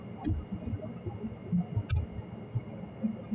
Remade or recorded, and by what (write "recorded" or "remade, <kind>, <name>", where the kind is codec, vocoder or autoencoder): recorded